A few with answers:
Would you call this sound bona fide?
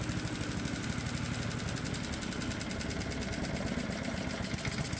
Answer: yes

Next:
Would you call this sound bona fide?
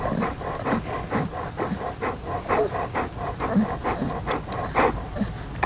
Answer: yes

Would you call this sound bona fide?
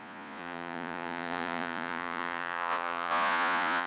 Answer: no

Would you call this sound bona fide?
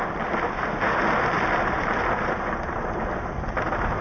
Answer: yes